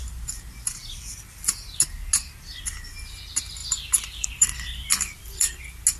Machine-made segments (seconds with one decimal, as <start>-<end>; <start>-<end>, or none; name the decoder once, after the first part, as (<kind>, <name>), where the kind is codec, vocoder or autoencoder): 0.8-1.4 (vocoder, BigVGAN v2); 3.6-5.6